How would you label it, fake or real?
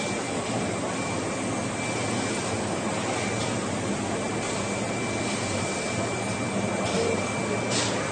real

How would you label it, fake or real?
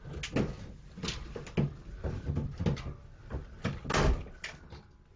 real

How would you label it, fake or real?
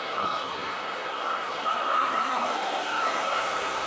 fake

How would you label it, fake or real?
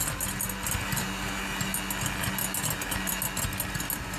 real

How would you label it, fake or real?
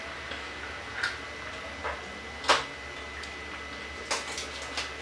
real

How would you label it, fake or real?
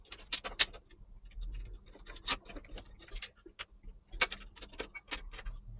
real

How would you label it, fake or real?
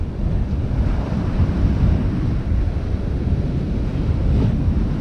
real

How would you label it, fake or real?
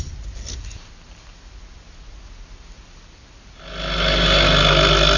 real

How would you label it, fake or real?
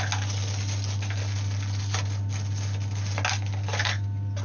real